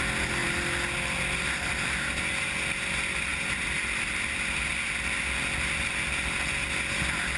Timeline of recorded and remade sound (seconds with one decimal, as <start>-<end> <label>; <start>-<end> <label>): 0.0-7.4 recorded